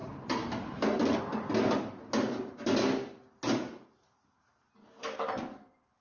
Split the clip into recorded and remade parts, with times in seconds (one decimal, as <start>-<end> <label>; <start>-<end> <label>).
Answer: 0.0-1.2 remade; 1.2-6.0 recorded